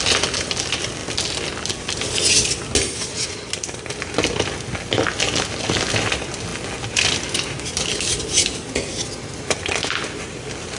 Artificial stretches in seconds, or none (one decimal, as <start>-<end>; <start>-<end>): none